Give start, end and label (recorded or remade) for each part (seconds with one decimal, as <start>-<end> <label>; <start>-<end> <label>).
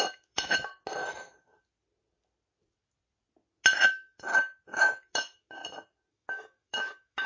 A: 0.0-0.7 remade; 0.7-3.9 recorded; 3.9-4.3 remade; 4.3-4.8 recorded; 4.8-5.6 remade; 5.6-6.1 recorded; 6.1-7.3 remade